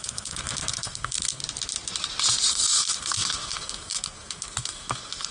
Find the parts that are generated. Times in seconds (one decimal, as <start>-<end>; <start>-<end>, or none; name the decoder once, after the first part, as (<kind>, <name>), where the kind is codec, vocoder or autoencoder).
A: 0.0-1.4 (codec, SNAC); 2.5-5.3